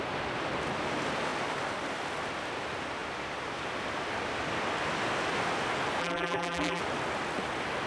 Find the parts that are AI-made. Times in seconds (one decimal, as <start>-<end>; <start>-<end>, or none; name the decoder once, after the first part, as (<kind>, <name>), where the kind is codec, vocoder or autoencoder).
6.0-6.8 (vocoder, BigVGAN v2)